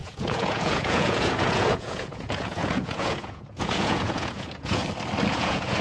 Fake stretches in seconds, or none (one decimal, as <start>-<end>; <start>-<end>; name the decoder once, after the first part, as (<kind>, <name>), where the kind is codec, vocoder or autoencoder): 0.0-4.8 (vocoder, Vocos); 5.3-5.8